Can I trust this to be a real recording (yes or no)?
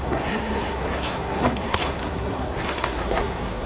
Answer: no